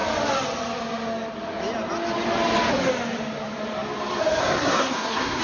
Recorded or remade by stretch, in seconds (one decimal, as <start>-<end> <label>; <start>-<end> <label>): 0.0-4.4 recorded; 4.4-5.4 remade

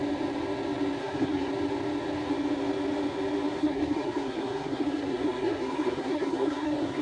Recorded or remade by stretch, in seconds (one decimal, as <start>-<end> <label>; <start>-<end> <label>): 0.0-1.0 recorded; 1.0-1.5 remade; 1.5-3.6 recorded; 3.6-7.0 remade

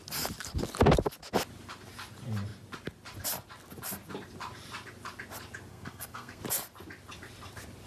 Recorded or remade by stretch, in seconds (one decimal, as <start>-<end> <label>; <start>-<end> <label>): 0.0-5.7 recorded; 5.7-6.4 remade; 6.4-7.9 recorded

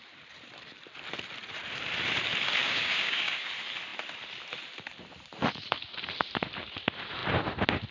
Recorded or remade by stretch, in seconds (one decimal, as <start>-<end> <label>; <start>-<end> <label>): 0.0-2.6 recorded; 2.6-3.5 remade; 3.5-7.9 recorded

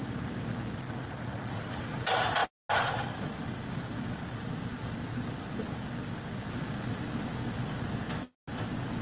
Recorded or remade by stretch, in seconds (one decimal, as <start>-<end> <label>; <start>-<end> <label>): 0.0-9.0 recorded

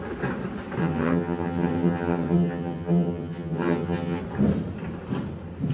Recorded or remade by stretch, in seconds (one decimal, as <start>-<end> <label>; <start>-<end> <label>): 0.0-0.8 recorded; 0.8-4.2 remade; 4.2-5.7 recorded